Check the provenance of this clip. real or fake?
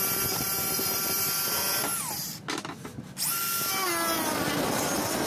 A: real